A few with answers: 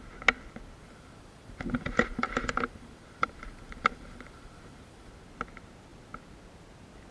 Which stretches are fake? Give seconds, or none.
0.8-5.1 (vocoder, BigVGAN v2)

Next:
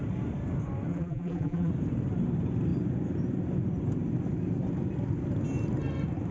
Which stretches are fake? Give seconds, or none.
0.9-1.7 (vocoder, BigVGAN v2)

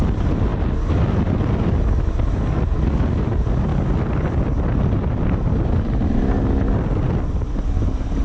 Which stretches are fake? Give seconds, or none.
none

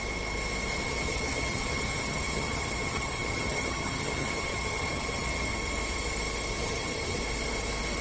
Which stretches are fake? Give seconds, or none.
0.7-5.5 (vocoder, HiFi-GAN); 6.5-7.2

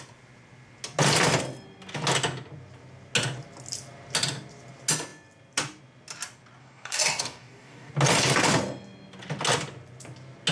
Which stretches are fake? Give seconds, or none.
6.6-7.9 (codec, DAC)